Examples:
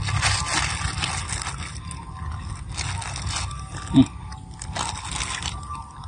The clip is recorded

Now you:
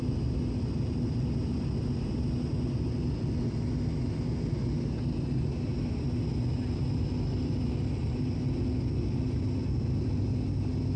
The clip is recorded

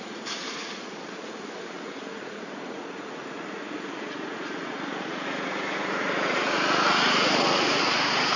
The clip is remade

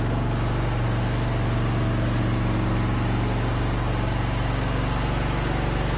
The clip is recorded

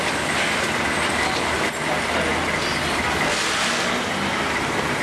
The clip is recorded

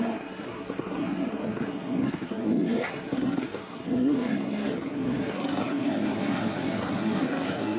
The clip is remade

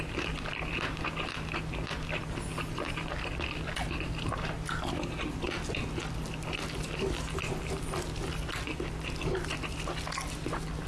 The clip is recorded